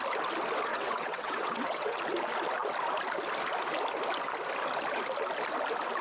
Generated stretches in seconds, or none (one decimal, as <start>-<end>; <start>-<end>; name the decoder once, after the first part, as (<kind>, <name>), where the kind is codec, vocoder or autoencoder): 0.7-2.0 (vocoder, WaveNeXt)